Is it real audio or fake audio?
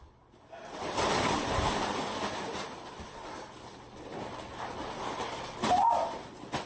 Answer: real